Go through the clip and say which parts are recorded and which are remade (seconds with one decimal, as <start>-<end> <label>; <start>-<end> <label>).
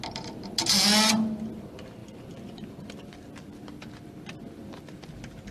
0.0-5.5 recorded